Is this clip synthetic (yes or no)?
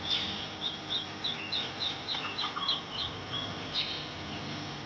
no